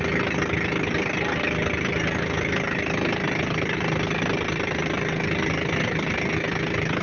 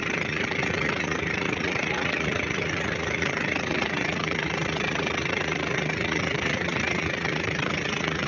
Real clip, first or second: first